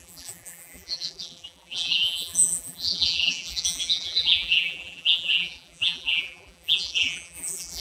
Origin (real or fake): fake